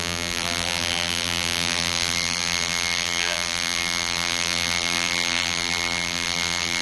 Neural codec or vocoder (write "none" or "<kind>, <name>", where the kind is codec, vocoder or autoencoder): vocoder, BigVGAN v2